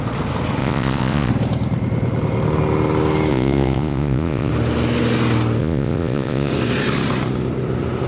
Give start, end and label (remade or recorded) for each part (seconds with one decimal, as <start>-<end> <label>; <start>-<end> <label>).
0.0-0.6 recorded; 0.6-1.3 remade; 1.3-3.3 recorded; 3.3-4.5 remade; 4.5-5.6 recorded; 5.6-6.5 remade; 6.5-8.1 recorded